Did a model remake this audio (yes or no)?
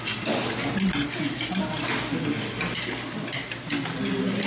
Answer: no